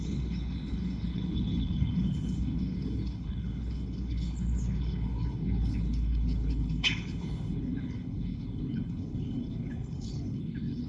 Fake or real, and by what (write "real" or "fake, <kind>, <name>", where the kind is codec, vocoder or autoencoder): fake, codec, HILCodec